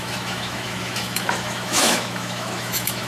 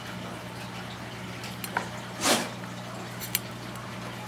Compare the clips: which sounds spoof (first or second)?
first